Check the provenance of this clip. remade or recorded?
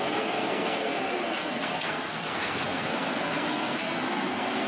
remade